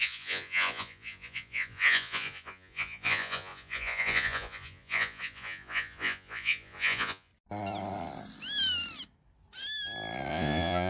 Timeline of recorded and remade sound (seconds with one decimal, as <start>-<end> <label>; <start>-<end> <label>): 0.0-7.3 remade; 7.3-10.3 recorded; 10.3-10.9 remade